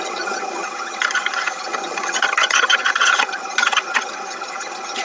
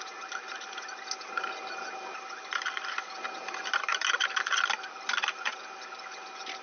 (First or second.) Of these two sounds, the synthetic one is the first